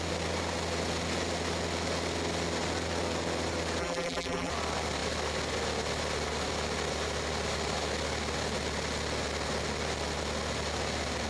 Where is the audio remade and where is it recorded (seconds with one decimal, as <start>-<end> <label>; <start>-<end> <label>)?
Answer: 0.0-3.8 recorded; 3.8-4.5 remade; 4.5-11.3 recorded